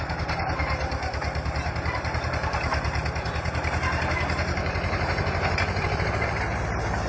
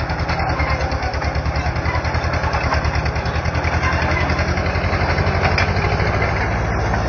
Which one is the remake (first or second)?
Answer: first